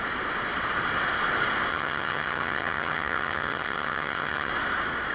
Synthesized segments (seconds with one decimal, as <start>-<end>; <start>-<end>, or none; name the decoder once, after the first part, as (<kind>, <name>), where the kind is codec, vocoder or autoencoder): 1.7-4.5 (vocoder, HiFi-GAN)

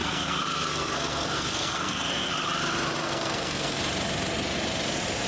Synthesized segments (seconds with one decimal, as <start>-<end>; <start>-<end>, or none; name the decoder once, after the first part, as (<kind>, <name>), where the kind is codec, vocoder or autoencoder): 0.0-2.3 (codec, SNAC); 3.0-3.8

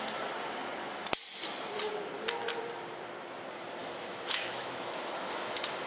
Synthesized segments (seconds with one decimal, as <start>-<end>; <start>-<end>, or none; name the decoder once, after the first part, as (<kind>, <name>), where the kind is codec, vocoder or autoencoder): 3.8-5.9 (autoencoder, DAC-VAE)

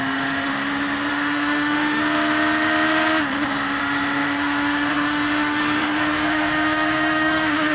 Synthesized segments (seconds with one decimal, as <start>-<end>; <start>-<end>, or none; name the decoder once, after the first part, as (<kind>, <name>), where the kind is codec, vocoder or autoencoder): 0.0-0.5 (autoencoder, DAC-VAE); 1.1-2.0; 3.8-7.7

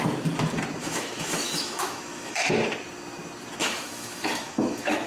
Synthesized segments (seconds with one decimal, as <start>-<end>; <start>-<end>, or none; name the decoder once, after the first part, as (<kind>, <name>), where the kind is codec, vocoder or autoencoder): 0.8-2.5 (autoencoder, DAC-VAE); 3.6-5.1